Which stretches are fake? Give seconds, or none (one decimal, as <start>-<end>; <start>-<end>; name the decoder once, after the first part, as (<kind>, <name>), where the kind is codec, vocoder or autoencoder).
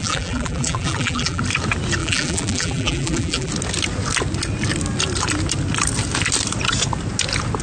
0.0-1.4 (vocoder, BigVGAN v2); 2.0-3.5